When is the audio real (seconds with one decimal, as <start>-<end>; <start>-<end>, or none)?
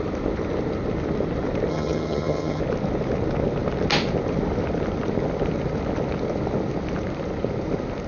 0.0-1.7; 2.6-8.1